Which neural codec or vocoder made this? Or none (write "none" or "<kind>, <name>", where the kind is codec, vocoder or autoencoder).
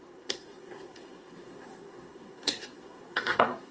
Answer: codec, SNAC